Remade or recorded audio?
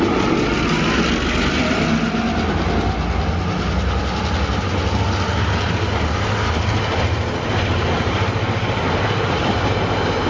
recorded